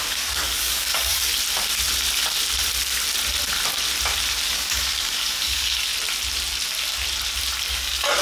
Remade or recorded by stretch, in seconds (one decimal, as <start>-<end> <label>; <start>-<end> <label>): 0.0-1.3 remade; 1.3-4.5 recorded; 4.5-5.9 remade; 5.9-7.7 recorded; 7.7-8.2 remade